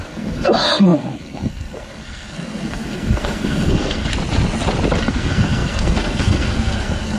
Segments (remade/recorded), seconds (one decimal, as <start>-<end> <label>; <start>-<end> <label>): 0.0-4.1 remade; 4.1-5.0 recorded; 5.0-7.2 remade